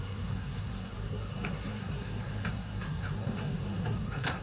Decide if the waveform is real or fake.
fake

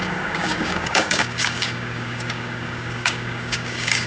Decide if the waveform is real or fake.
fake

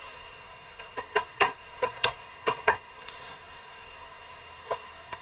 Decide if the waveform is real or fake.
fake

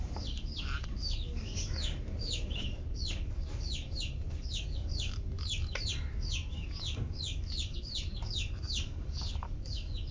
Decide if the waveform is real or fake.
fake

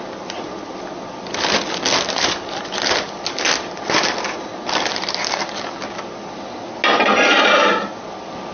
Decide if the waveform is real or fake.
real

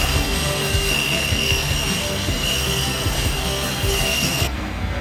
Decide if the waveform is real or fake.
fake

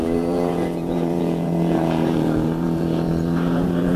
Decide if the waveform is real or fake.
fake